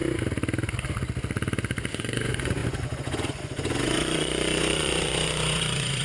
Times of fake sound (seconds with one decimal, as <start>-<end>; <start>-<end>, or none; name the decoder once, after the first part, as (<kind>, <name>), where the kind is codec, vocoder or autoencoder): 1.9-6.0 (vocoder, Vocos)